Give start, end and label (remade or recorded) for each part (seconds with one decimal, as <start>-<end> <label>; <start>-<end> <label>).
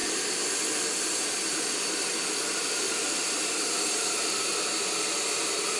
0.0-3.5 recorded; 3.5-4.5 remade; 4.5-5.8 recorded